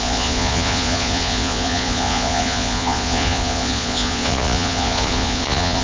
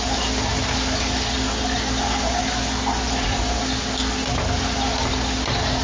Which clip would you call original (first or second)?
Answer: second